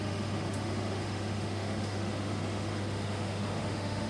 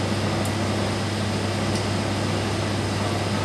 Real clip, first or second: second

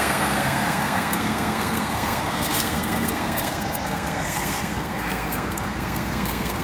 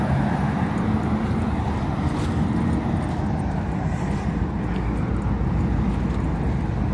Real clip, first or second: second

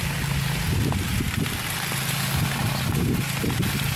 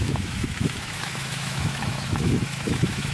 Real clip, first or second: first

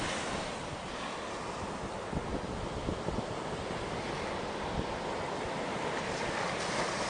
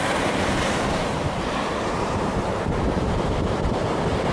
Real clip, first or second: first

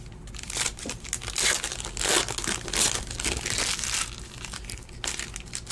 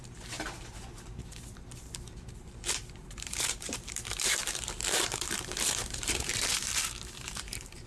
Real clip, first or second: first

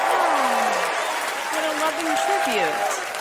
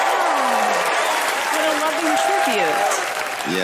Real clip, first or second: first